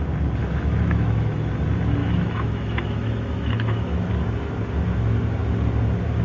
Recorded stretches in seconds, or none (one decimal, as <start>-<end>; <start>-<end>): 0.0-0.4; 1.5-2.0; 4.1-6.2